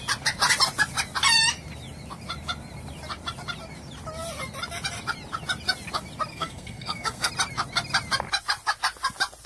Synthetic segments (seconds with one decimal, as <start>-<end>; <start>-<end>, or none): 6.3-7.3

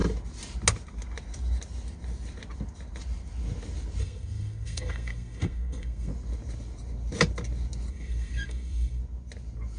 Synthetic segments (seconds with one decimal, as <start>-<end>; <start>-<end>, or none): 4.0-6.1; 7.9-9.0

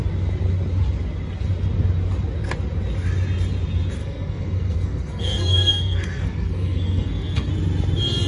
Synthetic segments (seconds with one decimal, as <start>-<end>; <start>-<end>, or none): 4.0-7.5

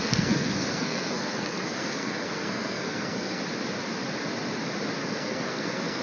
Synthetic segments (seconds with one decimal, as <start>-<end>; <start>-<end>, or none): 0.0-3.4; 5.0-6.0

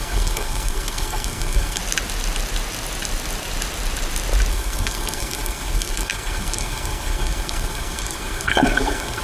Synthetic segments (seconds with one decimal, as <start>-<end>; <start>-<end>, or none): 0.0-1.8; 4.5-9.2

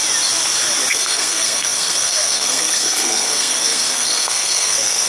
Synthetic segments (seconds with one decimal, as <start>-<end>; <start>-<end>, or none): 0.9-5.1

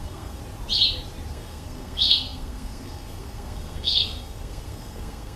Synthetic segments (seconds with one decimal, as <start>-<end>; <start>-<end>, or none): 0.0-0.4; 1.3-5.4